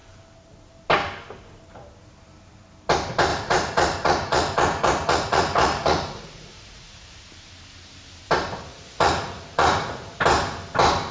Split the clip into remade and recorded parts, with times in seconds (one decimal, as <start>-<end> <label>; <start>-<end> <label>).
0.0-3.3 recorded; 3.3-7.2 remade; 7.2-8.7 recorded; 8.7-10.2 remade; 10.2-11.1 recorded